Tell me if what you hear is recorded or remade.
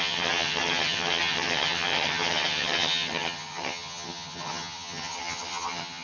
remade